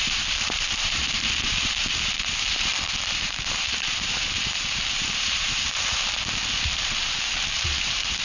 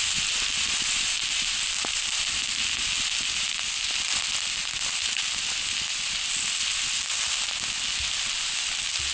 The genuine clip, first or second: second